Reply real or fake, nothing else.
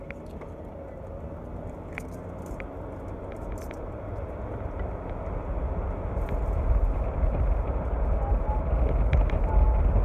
real